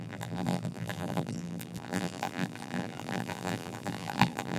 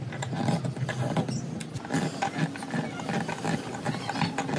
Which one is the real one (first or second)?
second